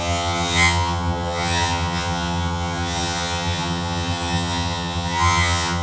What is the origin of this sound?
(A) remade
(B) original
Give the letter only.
A